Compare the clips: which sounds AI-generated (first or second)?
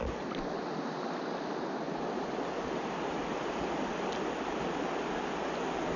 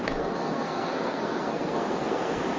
second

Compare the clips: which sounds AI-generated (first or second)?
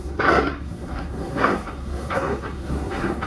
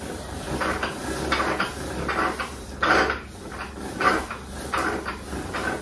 first